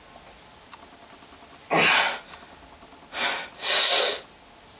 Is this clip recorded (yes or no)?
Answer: yes